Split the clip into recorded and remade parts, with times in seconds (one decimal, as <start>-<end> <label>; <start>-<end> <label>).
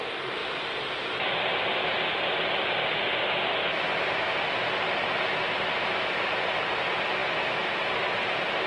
0.0-8.7 recorded